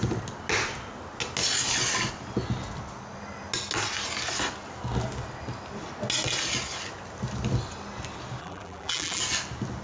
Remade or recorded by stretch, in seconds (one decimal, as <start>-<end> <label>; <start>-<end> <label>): 0.0-8.4 recorded; 8.4-9.2 remade; 9.2-9.8 recorded

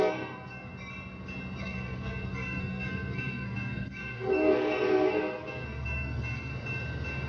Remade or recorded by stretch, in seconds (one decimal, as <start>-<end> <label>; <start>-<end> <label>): 0.0-0.7 remade; 0.7-1.6 recorded; 1.6-6.5 remade; 6.5-7.3 recorded